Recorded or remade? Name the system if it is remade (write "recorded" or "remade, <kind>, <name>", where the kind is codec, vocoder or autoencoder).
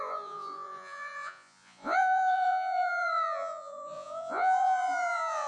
remade, vocoder, Vocos